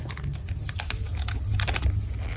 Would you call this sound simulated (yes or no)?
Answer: no